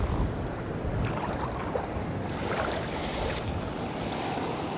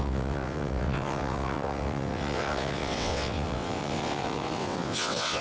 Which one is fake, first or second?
second